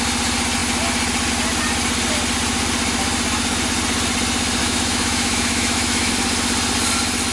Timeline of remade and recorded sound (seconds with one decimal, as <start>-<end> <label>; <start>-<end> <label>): 0.0-4.6 recorded; 4.6-6.1 remade; 6.1-7.3 recorded